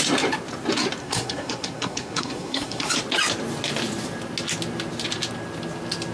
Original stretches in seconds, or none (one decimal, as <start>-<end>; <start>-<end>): 0.0-1.0; 2.9-6.1

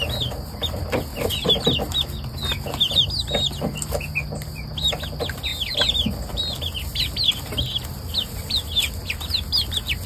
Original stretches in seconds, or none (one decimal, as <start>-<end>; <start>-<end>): 0.0-10.1

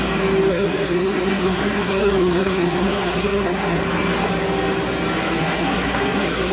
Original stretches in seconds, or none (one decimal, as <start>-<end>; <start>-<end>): 0.0-0.5; 3.8-5.4

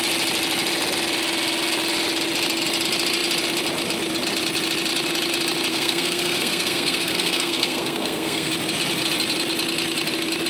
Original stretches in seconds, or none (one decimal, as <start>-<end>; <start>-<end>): 0.0-5.7; 8.5-10.5

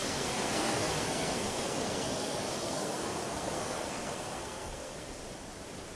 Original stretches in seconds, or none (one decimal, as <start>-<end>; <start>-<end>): 5.2-6.0

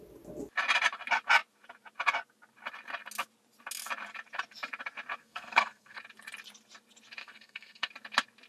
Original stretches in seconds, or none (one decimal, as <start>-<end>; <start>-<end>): 0.0-5.2; 6.0-7.2; 7.9-8.5

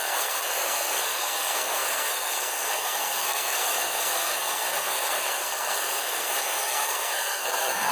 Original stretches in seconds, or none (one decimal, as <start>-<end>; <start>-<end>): none